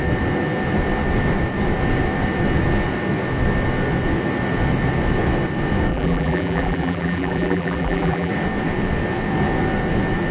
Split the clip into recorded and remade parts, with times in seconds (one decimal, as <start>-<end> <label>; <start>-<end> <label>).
0.0-5.9 recorded; 5.9-8.3 remade; 8.3-10.3 recorded